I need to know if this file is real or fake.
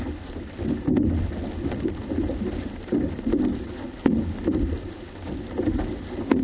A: real